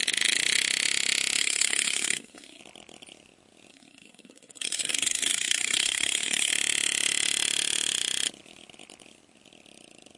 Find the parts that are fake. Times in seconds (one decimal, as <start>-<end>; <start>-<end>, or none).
1.4-2.6; 3.7-6.5